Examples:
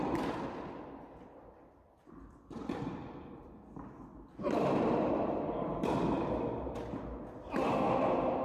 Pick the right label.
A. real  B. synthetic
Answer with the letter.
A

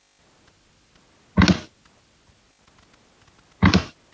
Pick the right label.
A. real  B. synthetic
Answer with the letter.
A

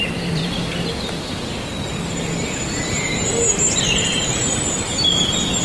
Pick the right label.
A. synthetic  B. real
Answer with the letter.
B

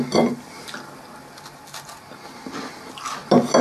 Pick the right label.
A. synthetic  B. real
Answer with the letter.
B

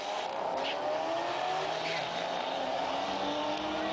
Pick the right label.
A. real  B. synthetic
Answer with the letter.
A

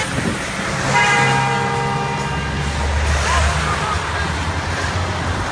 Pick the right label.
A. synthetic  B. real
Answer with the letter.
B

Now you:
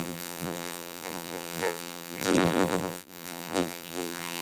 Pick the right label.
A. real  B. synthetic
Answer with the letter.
B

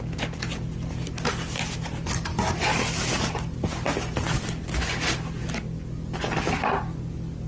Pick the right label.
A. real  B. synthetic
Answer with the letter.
A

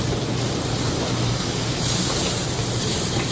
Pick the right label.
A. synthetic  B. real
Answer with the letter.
B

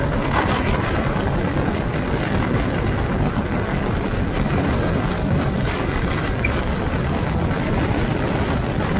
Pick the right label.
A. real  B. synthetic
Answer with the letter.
A